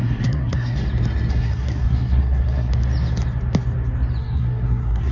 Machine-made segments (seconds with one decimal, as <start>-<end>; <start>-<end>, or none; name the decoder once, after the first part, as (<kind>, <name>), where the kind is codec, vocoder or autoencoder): 0.0-0.8 (codec, SNAC); 1.3-2.7; 4.2-5.1